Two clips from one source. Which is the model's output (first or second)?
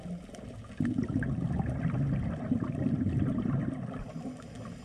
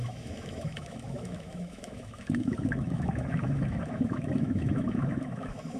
second